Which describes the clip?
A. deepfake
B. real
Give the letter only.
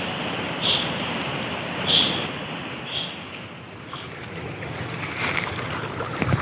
A